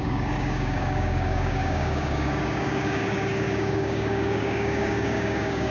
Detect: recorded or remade remade